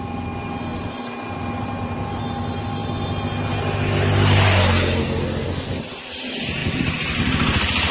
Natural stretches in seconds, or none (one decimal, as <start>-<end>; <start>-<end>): 0.0-5.0; 5.7-7.9